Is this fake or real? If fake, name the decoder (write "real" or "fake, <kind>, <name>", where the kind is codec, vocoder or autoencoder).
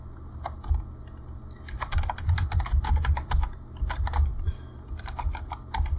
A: real